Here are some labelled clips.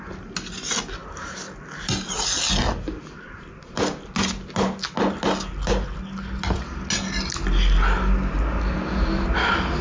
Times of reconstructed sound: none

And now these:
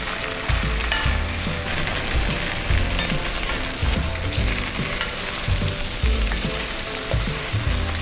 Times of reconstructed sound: 0.8-1.6 (vocoder, BigVGAN v2); 3.8-7.5

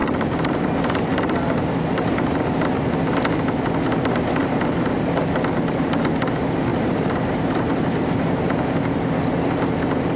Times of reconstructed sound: 0.0-0.7 (vocoder, BigVGAN v2); 1.1-2.9; 4.4-5.2; 6.7-8.8

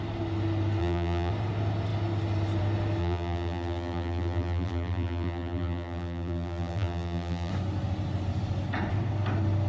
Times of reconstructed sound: 0.8-1.3 (vocoder, BigVGAN v2); 3.0-7.5

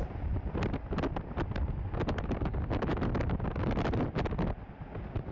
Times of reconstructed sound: none